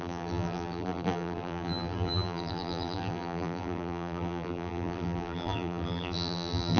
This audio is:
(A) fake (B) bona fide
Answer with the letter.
A